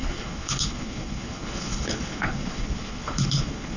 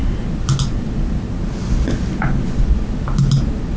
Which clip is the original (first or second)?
second